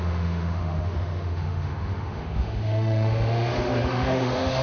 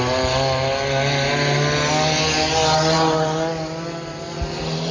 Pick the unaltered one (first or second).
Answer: second